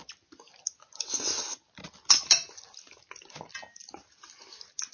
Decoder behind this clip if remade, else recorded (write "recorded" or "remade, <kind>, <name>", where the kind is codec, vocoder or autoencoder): recorded